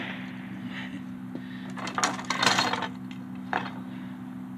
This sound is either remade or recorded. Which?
recorded